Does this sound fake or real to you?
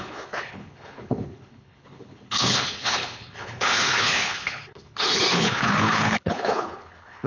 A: fake